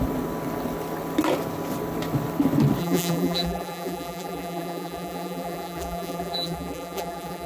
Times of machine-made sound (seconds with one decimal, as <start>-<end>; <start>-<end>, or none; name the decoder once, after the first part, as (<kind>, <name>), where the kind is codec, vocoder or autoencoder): 2.8-7.5 (vocoder, BigVGAN v2)